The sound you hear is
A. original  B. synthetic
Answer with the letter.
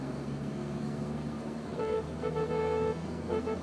B